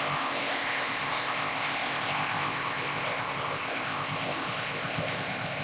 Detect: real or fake fake